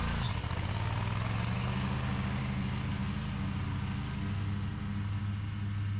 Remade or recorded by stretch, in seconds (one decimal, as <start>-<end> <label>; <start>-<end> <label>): 0.0-6.0 recorded